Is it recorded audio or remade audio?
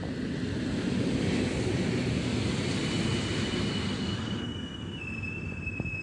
recorded